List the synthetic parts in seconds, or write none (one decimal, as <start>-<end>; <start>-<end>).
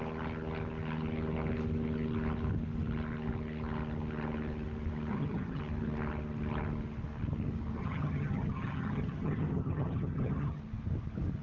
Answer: 5.1-5.6; 7.8-10.6